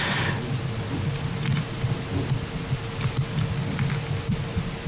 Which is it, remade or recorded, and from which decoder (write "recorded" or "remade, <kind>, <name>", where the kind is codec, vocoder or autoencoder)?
recorded